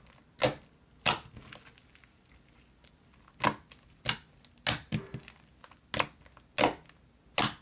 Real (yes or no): yes